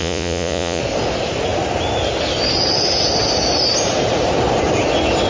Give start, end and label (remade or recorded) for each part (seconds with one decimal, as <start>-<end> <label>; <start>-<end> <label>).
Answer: 0.0-0.8 remade; 0.8-5.3 recorded

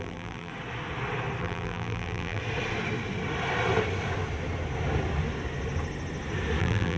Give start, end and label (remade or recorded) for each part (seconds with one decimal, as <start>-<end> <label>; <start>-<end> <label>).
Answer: 0.0-0.5 remade; 0.5-1.4 recorded; 1.4-2.4 remade; 2.4-6.6 recorded; 6.6-7.0 remade

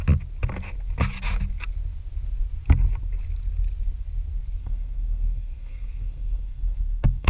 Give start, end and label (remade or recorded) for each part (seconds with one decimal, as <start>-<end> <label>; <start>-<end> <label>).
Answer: 0.0-4.6 recorded; 4.6-7.3 remade

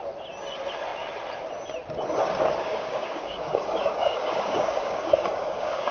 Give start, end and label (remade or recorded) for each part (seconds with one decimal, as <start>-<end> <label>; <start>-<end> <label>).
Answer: 0.0-2.2 recorded; 2.2-5.9 remade

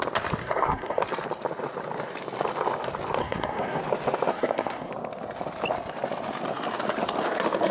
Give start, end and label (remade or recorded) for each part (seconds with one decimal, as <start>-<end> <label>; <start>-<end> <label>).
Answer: 0.0-0.4 recorded; 0.4-1.0 remade; 1.0-3.2 recorded; 3.2-3.8 remade; 3.8-4.3 recorded; 4.3-4.9 remade; 4.9-7.7 recorded